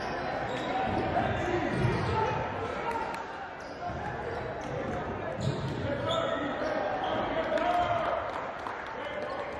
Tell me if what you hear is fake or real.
real